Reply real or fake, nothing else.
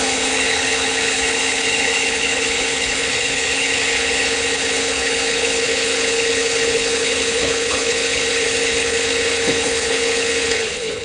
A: fake